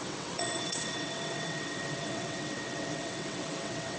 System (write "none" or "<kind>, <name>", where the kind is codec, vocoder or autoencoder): vocoder, WaveNeXt